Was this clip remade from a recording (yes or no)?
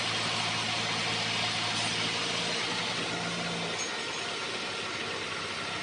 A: no